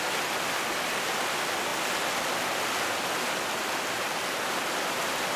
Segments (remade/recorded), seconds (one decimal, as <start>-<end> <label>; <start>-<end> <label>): 0.0-5.4 recorded